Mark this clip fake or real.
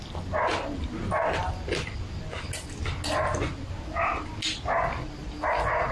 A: real